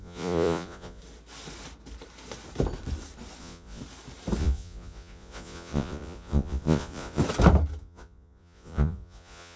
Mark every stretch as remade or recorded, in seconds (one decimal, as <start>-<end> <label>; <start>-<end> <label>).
0.0-1.0 remade; 1.0-3.4 recorded; 3.4-3.8 remade; 3.8-4.4 recorded; 4.4-7.2 remade; 7.2-7.8 recorded; 7.8-9.6 remade

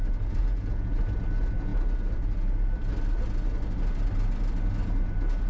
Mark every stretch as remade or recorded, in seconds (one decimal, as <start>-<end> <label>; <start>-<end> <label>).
0.0-0.4 recorded; 0.4-0.9 remade; 0.9-5.5 recorded

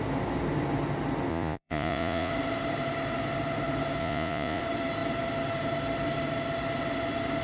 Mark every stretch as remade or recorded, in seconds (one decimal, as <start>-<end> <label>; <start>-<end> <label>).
0.0-1.3 recorded; 1.3-2.3 remade; 2.3-4.0 recorded; 4.0-4.6 remade; 4.6-7.4 recorded